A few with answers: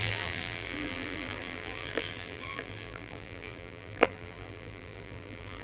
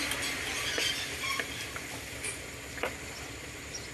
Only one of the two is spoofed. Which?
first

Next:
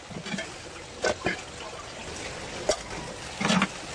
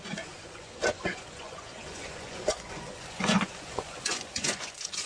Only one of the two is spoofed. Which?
second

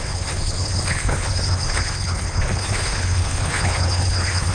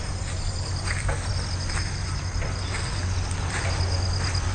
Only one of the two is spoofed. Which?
first